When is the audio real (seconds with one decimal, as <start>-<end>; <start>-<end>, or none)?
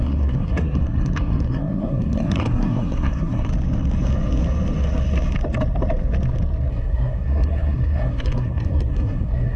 3.5-6.7